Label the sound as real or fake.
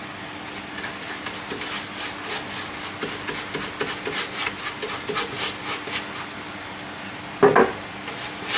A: real